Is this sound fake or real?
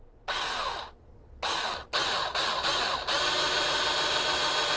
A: real